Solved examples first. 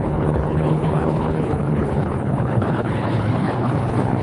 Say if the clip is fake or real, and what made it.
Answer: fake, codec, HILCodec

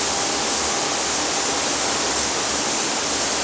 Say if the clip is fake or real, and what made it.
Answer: real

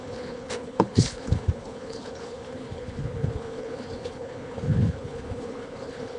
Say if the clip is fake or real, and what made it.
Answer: fake, codec, HILCodec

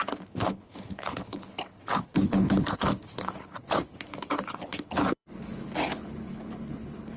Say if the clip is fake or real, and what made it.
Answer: fake, codec, HILCodec